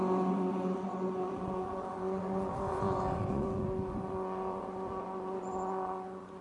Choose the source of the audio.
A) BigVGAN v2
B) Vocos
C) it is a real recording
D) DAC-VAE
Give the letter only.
B